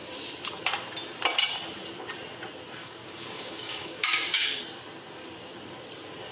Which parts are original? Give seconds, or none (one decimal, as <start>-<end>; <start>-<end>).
0.0-2.8; 4.6-6.3